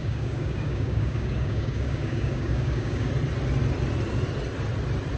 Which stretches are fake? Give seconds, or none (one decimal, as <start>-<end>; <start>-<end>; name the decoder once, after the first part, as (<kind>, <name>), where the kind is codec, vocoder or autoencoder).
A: 0.0-3.1 (codec, DAC)